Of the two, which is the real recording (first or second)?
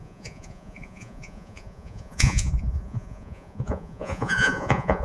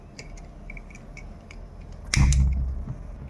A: second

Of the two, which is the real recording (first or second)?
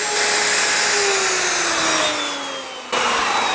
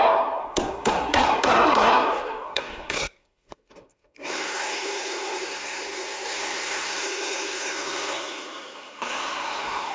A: first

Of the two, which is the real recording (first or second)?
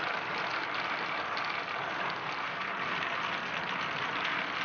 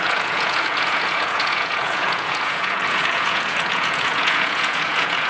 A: first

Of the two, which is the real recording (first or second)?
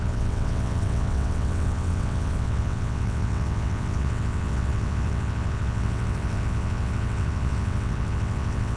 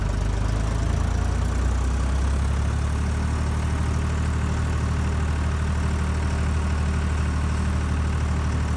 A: second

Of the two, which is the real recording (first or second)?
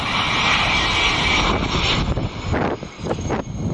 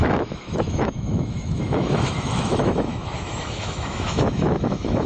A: first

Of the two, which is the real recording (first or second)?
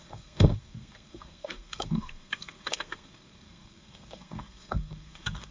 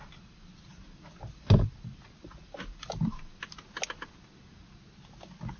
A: second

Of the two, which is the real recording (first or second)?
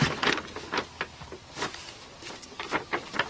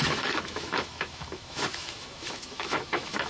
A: first